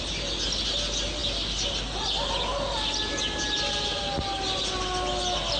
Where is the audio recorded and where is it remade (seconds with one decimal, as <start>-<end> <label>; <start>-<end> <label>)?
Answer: 0.0-5.6 recorded